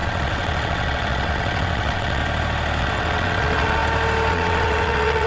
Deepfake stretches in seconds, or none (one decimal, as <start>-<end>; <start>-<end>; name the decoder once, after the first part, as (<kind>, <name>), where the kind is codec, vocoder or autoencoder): 0.0-2.2 (vocoder, WaveNeXt); 2.8-3.8; 4.3-5.3